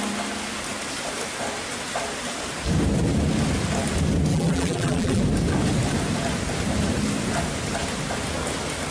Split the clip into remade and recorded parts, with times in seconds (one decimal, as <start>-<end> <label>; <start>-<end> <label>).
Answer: 0.0-4.3 recorded; 4.3-5.2 remade; 5.2-8.9 recorded